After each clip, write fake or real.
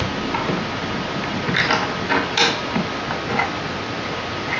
real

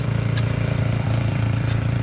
fake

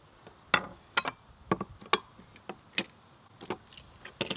real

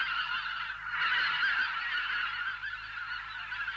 real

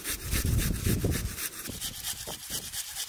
fake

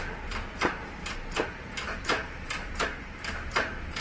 fake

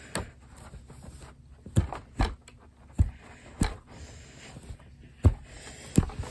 real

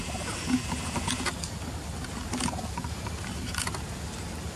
real